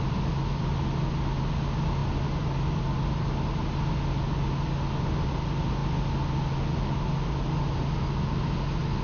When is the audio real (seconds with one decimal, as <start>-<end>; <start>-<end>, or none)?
0.0-9.0